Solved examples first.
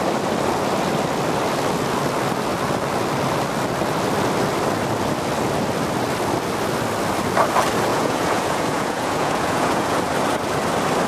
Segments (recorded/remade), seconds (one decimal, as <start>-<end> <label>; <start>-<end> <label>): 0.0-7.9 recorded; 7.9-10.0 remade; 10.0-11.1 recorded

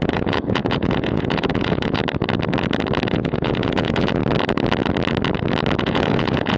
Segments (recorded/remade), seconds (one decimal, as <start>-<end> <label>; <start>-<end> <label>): 0.0-2.0 remade; 2.0-3.1 recorded; 3.1-4.2 remade; 4.2-5.8 recorded; 5.8-6.6 remade

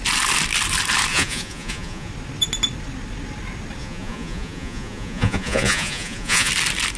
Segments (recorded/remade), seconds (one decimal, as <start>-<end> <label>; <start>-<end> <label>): 0.0-1.1 recorded; 1.1-2.1 remade; 2.1-3.8 recorded; 3.8-6.5 remade; 6.5-7.0 recorded

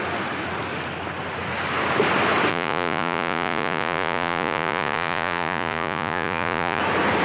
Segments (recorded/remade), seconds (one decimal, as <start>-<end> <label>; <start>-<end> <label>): 0.0-2.5 recorded; 2.5-6.8 remade; 6.8-7.2 recorded

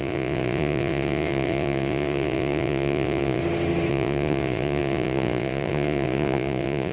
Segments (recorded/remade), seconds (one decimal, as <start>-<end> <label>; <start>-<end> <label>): 0.0-3.4 remade; 3.4-3.9 recorded; 3.9-6.9 remade

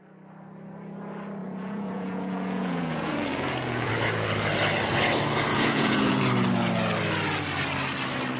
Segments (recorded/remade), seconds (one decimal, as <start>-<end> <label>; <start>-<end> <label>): 0.0-1.4 recorded; 1.4-3.9 remade; 3.9-5.5 recorded; 5.5-6.2 remade; 6.2-8.4 recorded